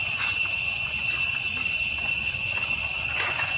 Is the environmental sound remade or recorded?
remade